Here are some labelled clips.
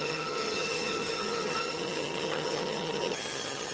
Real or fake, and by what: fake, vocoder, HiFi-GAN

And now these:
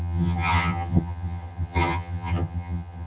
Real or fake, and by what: fake, vocoder, HiFi-GAN